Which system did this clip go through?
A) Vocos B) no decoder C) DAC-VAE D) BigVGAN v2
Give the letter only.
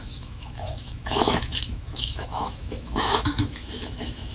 C